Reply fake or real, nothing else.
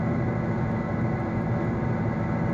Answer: real